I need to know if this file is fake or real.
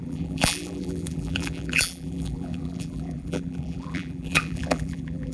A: fake